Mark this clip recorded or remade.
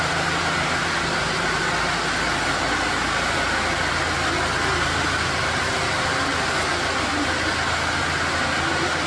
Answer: recorded